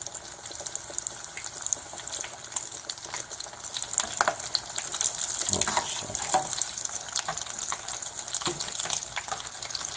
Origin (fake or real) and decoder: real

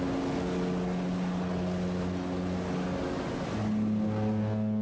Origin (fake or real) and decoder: real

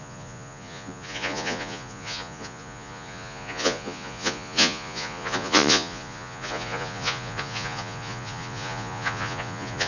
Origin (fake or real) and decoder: fake, vocoder, Vocos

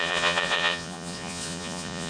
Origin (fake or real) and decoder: fake, vocoder, Vocos